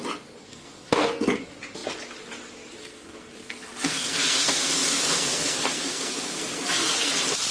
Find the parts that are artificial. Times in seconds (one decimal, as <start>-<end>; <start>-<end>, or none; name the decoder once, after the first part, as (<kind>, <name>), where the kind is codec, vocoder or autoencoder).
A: 0.4-1.4 (codec, SNAC); 2.8-7.1